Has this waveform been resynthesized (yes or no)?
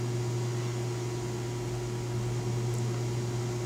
no